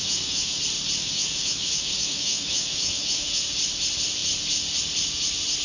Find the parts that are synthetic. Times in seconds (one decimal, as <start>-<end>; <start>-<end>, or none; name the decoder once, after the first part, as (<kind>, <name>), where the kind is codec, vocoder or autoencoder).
0.0-0.6 (autoencoder, DAC-VAE); 1.0-3.3